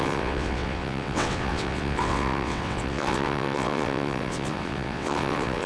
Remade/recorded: remade